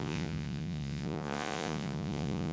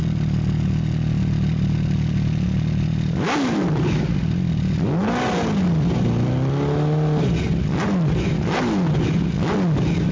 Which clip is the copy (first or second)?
first